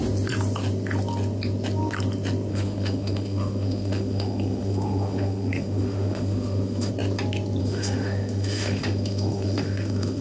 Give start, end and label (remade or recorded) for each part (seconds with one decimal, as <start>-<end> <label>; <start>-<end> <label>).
0.0-2.5 recorded; 2.5-6.9 remade; 6.9-7.6 recorded; 7.6-10.2 remade